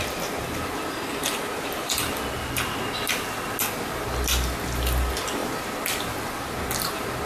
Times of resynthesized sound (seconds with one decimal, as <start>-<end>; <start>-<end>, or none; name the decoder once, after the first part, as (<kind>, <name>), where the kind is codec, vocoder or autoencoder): none